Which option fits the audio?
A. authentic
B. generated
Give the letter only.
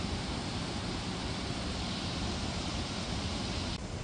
A